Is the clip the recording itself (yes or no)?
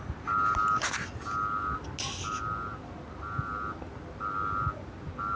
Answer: yes